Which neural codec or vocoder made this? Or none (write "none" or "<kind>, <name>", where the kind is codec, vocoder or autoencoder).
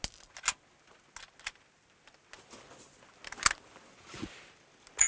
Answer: none